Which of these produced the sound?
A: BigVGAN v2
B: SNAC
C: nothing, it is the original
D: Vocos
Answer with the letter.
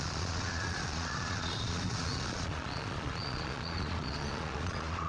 D